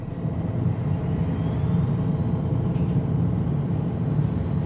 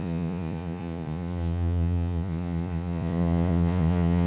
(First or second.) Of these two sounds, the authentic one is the first